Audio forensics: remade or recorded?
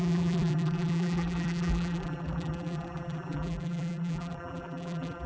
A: remade